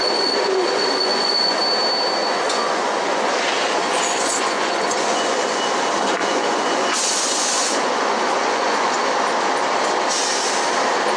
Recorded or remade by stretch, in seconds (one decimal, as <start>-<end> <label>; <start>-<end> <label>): 0.0-1.6 remade; 1.6-2.2 recorded; 2.2-3.4 remade; 3.4-3.8 recorded; 3.8-5.6 remade; 5.6-6.2 recorded; 6.2-9.1 remade; 9.1-11.2 recorded